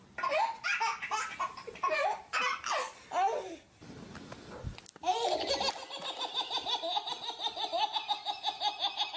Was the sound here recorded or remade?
recorded